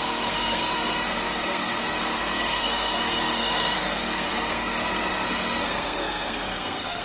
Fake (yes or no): yes